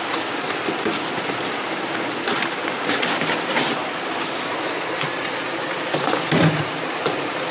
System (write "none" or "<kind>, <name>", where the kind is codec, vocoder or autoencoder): vocoder, BigVGAN v2